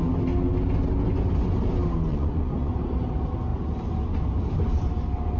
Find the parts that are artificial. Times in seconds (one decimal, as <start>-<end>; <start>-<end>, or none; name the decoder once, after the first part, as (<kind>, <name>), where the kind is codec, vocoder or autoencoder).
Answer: 2.1-2.7 (vocoder, Vocos)